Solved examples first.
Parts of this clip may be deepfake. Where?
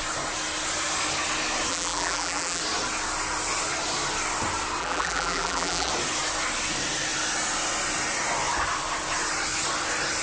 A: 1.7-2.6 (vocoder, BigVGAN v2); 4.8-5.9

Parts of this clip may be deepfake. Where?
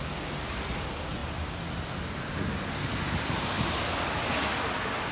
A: none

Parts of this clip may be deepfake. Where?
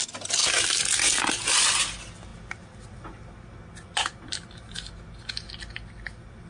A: none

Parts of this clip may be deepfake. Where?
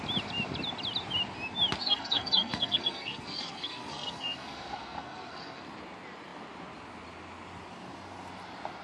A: 1.8-5.6 (codec, SNAC)